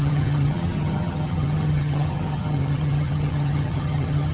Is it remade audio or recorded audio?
remade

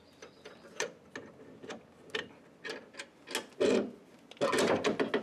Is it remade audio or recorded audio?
recorded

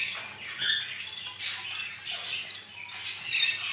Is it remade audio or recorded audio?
recorded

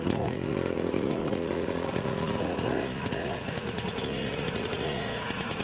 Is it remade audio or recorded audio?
remade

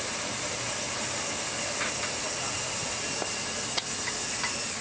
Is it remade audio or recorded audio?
recorded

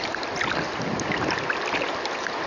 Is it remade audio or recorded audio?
recorded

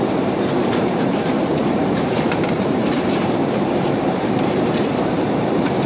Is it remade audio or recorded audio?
remade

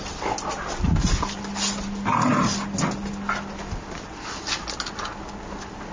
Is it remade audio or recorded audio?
recorded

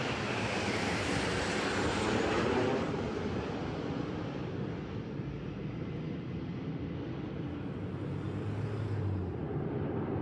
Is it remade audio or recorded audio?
recorded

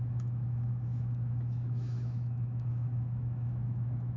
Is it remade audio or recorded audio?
remade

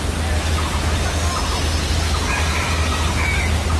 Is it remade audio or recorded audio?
recorded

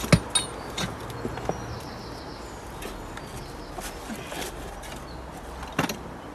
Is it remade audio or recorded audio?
recorded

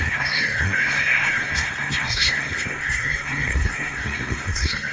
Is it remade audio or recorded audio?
remade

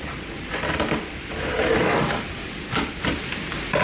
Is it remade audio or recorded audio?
recorded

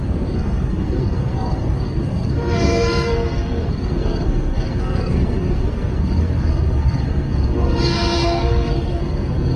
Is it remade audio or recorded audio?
remade